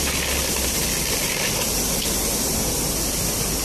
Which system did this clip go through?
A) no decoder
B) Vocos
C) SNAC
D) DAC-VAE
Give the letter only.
A